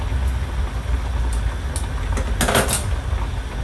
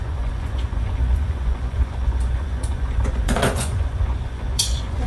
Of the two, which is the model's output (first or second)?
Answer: second